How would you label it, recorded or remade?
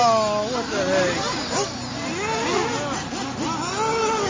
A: recorded